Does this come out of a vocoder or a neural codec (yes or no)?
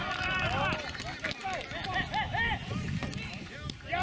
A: no